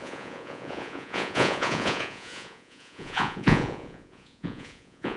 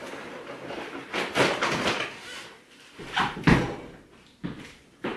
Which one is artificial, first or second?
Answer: first